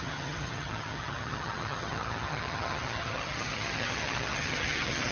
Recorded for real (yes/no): no